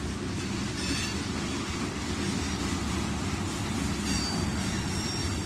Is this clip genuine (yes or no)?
yes